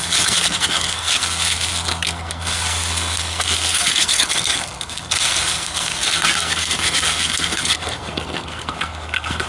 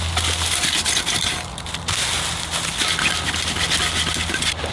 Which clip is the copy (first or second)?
first